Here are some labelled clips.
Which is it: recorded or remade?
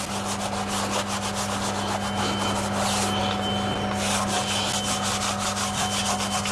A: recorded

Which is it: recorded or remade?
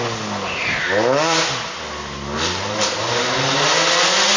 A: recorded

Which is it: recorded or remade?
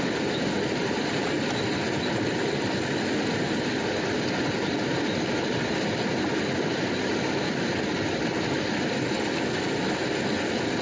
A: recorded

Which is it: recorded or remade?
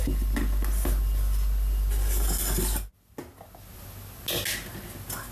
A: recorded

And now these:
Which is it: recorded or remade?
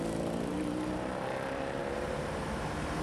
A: remade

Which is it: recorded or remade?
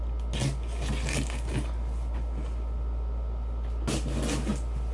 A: recorded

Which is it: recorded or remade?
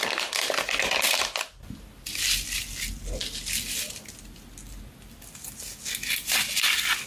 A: recorded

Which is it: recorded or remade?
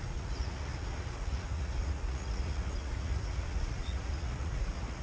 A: remade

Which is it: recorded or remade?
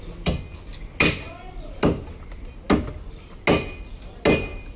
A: recorded